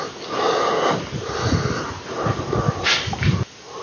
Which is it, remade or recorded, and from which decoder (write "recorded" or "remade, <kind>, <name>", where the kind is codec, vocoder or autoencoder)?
remade, vocoder, BigVGAN v2